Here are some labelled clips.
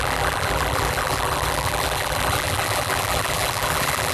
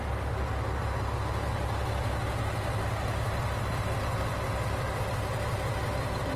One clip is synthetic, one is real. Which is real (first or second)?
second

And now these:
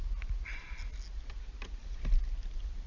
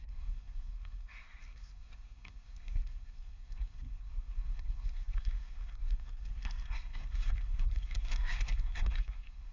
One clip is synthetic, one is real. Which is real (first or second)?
first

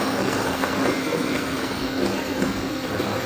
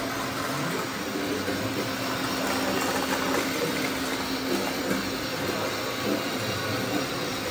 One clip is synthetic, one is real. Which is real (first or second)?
second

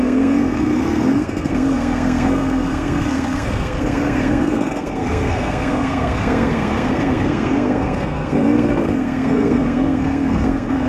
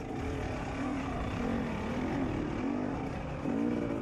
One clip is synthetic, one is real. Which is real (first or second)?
second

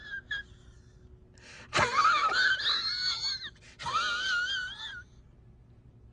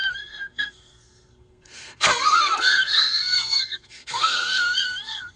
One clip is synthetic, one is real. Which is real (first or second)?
first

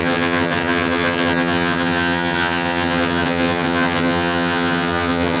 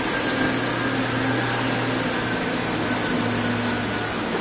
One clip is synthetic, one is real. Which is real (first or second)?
second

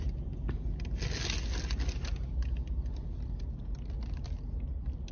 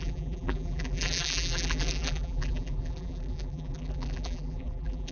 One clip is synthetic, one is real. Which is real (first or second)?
first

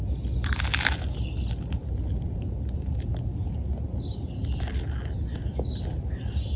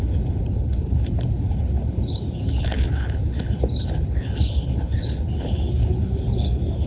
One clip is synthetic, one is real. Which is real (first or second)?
first